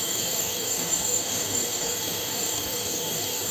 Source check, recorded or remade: remade